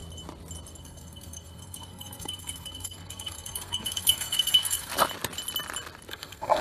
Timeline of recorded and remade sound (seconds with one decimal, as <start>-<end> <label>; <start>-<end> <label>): 0.0-0.8 recorded; 0.8-4.9 remade; 4.9-6.1 recorded; 6.1-6.6 remade